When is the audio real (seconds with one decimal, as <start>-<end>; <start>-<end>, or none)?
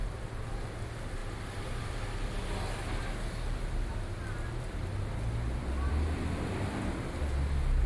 0.0-7.9